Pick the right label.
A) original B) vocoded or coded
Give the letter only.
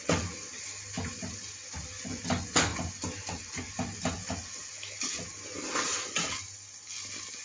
A